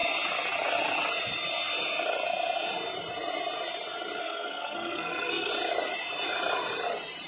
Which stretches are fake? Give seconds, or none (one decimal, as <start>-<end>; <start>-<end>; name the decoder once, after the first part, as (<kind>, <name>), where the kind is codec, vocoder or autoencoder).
4.2-5.5 (codec, SNAC)